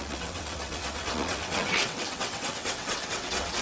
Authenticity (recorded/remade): remade